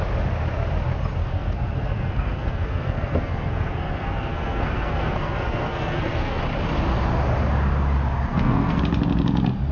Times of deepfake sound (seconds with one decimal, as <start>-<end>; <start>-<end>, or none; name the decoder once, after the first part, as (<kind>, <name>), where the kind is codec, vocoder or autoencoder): 1.2-6.4 (codec, SNAC); 8.3-8.8